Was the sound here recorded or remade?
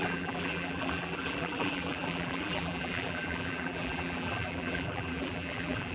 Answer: remade